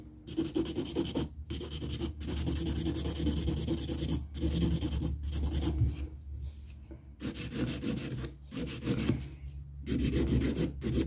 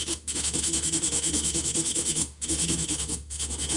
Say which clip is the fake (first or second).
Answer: second